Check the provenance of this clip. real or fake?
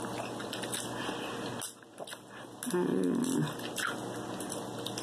real